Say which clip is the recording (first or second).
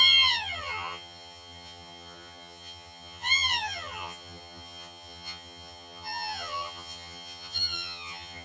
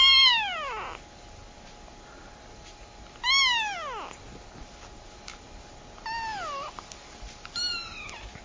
second